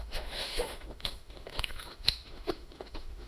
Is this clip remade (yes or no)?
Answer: yes